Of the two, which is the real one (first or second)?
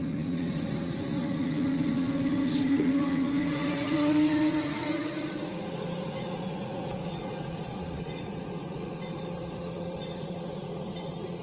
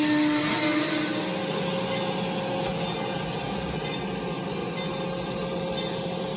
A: second